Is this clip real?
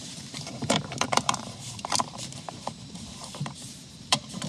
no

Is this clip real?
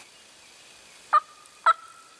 yes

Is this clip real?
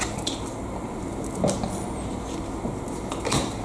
yes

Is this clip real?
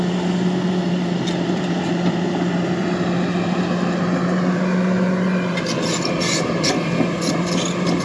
no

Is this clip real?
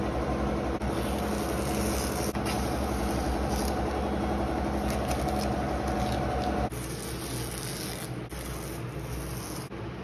yes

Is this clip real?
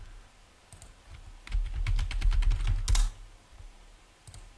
yes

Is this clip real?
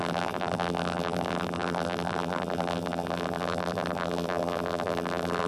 no